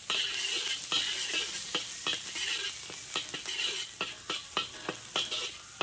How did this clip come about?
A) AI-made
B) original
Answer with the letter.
B